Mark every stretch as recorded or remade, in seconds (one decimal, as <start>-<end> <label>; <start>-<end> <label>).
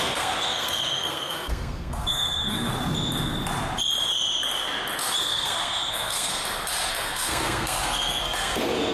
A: 0.0-2.7 remade; 2.7-5.2 recorded; 5.2-6.4 remade; 6.4-6.9 recorded; 6.9-8.9 remade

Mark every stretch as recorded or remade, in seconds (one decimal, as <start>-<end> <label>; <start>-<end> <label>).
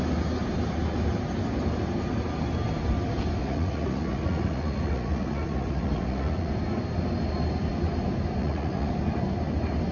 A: 0.0-3.4 recorded; 3.4-6.5 remade; 6.5-8.4 recorded; 8.4-8.9 remade; 8.9-9.9 recorded